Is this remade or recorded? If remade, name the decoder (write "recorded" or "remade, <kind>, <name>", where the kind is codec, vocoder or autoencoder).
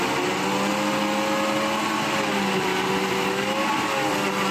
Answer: recorded